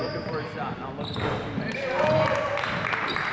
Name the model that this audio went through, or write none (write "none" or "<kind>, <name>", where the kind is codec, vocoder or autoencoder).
none